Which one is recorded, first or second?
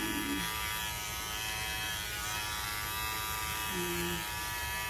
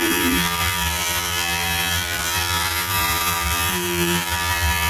first